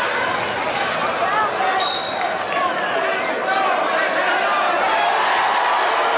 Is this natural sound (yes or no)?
yes